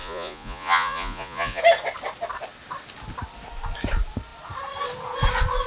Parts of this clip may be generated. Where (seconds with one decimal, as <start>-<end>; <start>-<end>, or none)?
0.0-1.6